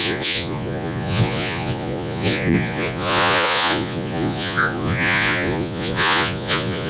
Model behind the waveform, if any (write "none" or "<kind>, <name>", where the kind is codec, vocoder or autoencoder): vocoder, Vocos